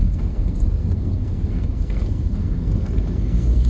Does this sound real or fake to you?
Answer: fake